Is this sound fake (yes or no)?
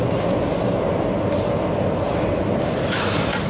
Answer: yes